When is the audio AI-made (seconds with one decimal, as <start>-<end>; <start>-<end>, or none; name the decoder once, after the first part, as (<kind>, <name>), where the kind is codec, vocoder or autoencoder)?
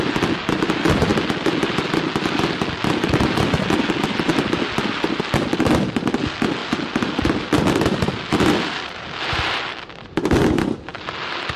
none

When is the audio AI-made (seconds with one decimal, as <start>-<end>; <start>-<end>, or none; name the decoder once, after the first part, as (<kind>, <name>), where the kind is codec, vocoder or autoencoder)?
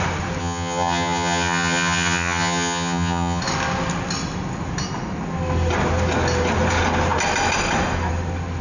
0.4-3.4 (vocoder, HiFi-GAN)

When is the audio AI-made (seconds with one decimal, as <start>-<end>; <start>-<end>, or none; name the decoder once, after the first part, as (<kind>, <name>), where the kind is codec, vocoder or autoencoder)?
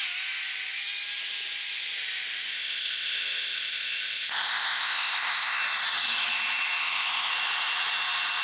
2.5-5.6 (codec, ZipCodec); 6.8-7.3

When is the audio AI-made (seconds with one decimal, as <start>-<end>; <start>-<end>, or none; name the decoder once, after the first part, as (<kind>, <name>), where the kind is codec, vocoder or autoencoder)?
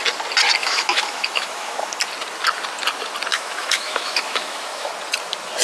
0.6-1.9 (autoencoder, DAC-VAE); 3.3-4.9